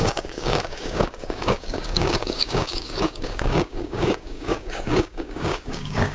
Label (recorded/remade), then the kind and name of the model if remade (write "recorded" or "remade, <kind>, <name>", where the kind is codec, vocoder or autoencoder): remade, codec, DAC